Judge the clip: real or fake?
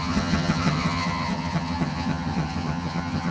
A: fake